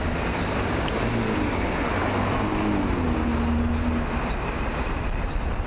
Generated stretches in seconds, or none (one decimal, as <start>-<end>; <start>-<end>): none